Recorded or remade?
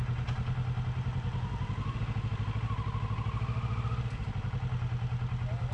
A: recorded